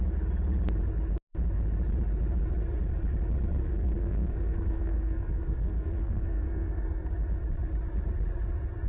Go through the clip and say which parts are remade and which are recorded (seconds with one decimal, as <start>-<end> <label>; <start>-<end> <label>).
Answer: 0.0-3.6 recorded; 3.6-7.1 remade; 7.1-8.9 recorded